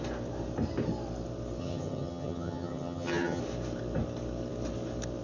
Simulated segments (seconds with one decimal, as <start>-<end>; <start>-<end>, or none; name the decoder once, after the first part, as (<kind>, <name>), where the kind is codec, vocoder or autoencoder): 1.6-3.4 (vocoder, HiFi-GAN)